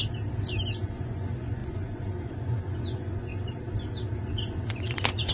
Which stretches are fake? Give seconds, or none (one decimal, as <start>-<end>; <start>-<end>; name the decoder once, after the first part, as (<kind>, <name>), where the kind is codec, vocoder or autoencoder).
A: 0.8-3.3 (vocoder, Vocos); 4.3-5.3